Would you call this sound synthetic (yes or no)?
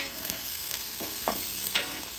yes